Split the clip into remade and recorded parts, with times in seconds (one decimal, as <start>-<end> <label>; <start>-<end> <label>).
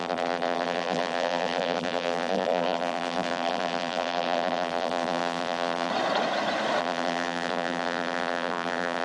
0.0-5.9 remade; 5.9-6.8 recorded; 6.8-9.0 remade